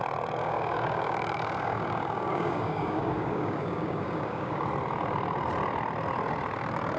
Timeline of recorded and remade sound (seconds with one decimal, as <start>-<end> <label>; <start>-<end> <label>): 0.0-0.4 recorded; 0.4-4.6 remade; 4.6-7.0 recorded